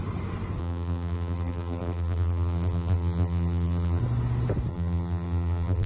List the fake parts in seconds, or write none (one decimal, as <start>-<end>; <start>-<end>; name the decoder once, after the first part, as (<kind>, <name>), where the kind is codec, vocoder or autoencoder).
0.6-4.0 (vocoder, BigVGAN v2); 4.7-5.9